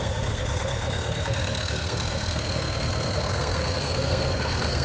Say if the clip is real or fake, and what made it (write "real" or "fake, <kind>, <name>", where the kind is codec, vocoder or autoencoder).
fake, codec, SNAC